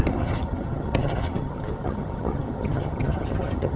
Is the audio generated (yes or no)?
yes